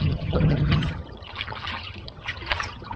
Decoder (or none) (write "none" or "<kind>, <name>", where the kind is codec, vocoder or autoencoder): vocoder, HiFi-GAN